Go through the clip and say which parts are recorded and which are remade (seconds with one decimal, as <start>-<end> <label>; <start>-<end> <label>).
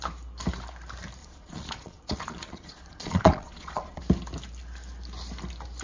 0.0-1.2 recorded; 1.2-4.0 remade; 4.0-5.8 recorded